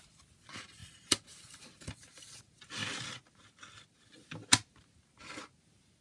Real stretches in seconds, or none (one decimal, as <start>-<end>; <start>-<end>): 0.0-6.0